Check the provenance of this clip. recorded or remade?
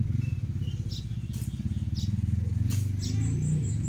recorded